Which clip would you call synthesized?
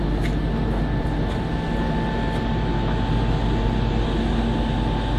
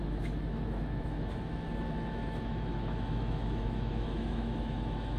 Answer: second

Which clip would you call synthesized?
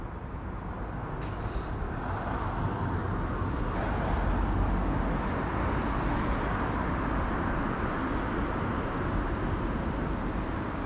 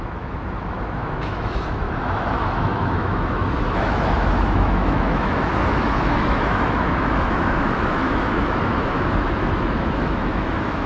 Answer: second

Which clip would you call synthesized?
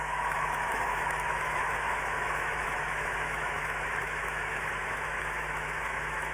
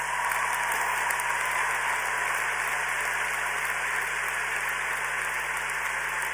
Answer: first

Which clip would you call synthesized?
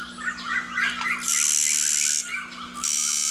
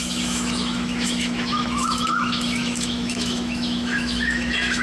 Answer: second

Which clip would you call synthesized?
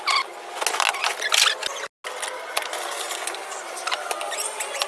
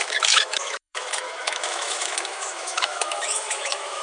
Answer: second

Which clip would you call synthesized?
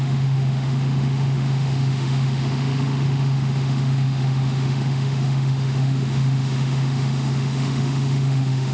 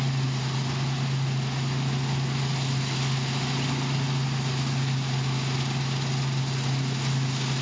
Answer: first